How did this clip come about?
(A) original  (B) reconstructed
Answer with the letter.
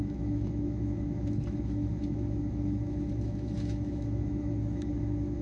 B